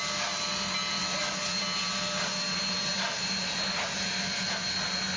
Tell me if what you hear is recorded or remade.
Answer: recorded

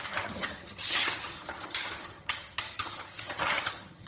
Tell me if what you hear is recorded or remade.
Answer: remade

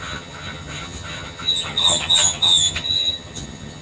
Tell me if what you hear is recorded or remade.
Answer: remade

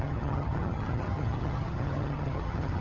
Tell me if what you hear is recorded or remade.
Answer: remade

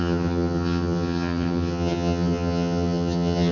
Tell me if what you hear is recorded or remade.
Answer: remade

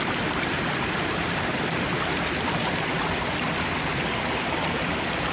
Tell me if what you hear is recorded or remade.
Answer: recorded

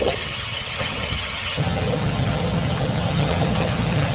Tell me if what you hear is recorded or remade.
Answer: remade